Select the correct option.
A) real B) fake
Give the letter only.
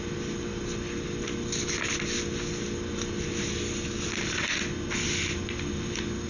A